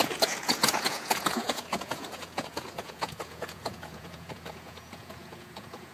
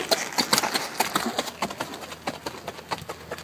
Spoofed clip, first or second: first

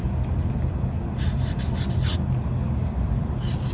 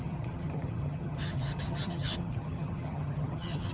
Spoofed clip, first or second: second